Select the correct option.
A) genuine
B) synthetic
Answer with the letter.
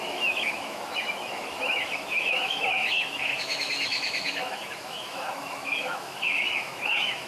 B